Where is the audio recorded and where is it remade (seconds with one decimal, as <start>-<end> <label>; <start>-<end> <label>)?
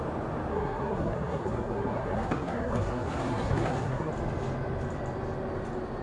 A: 0.0-0.5 recorded; 0.5-4.1 remade; 4.1-6.0 recorded